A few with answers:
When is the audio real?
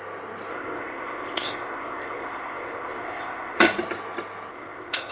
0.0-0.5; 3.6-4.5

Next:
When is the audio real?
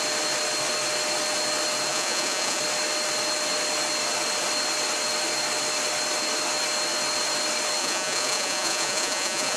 0.0-1.9; 2.6-7.8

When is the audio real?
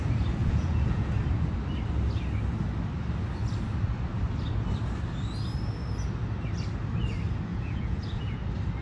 0.0-0.4; 1.1-7.5; 8.4-8.8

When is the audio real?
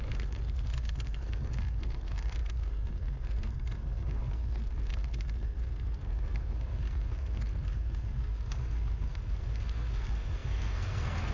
none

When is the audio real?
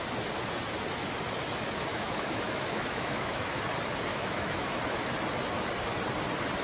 0.0-1.9; 3.6-4.1; 5.1-6.6